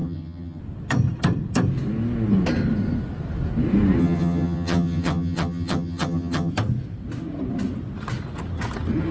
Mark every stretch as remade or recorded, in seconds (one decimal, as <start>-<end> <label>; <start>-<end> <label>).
0.0-0.6 remade; 0.6-4.0 recorded; 4.0-6.5 remade; 6.5-9.1 recorded